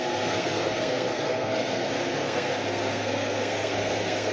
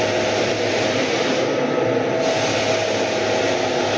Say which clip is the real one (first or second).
second